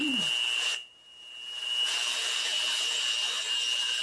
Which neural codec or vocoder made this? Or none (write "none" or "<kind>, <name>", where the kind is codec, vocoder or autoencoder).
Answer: none